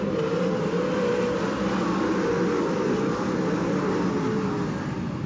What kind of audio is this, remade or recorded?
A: recorded